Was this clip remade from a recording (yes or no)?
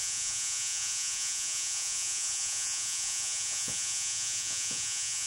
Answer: yes